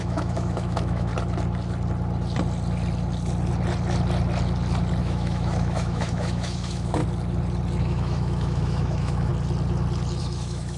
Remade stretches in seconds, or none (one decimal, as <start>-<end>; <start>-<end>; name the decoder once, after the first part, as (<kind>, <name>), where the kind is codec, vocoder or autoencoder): 0.0-1.1 (autoencoder, DAC-VAE); 5.0-7.0; 7.8-9.3; 10.2-10.8

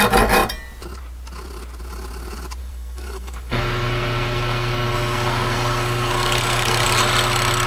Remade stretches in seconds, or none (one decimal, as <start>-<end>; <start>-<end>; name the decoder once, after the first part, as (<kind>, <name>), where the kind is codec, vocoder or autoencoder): 2.6-7.0 (codec, SNAC)